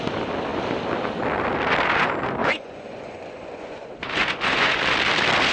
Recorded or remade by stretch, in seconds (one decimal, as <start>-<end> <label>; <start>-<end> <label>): 0.0-2.4 recorded; 2.4-4.8 remade; 4.8-5.5 recorded